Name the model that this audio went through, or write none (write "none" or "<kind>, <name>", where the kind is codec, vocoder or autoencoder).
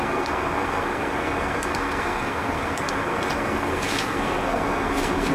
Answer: codec, SNAC